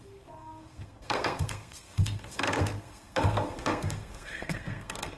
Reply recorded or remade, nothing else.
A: remade